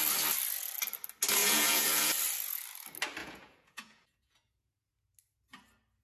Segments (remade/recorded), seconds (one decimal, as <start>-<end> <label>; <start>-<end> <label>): 0.0-1.4 recorded; 1.4-2.1 remade; 2.1-3.2 recorded; 3.2-4.9 remade; 4.9-6.0 recorded